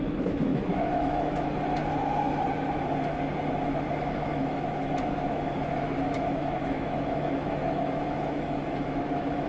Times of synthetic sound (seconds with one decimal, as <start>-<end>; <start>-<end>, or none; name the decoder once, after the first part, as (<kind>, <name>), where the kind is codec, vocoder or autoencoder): 0.0-1.8 (autoencoder, DAC-VAE); 3.9-9.5